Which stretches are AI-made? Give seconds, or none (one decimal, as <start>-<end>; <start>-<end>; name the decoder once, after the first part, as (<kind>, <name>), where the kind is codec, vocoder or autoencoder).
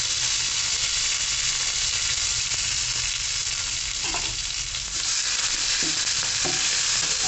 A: none